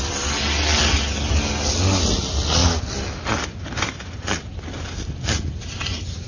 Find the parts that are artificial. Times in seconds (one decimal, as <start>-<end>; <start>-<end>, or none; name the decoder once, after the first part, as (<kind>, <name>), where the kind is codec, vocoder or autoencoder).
none